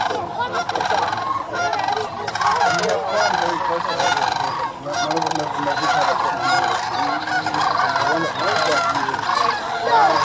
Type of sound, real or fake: real